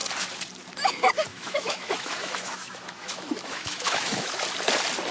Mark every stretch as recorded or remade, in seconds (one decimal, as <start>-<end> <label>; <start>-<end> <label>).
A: 0.0-1.3 recorded; 1.3-4.4 remade; 4.4-5.1 recorded